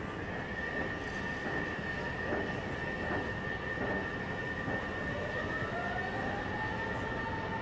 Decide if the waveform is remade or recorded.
recorded